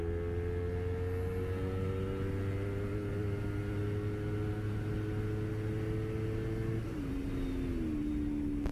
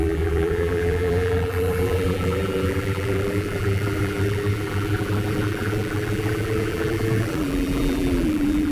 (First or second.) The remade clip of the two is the second